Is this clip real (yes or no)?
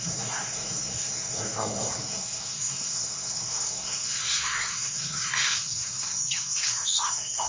no